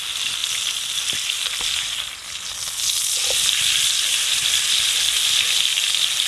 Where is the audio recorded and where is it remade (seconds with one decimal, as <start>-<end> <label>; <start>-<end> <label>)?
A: 0.0-6.3 recorded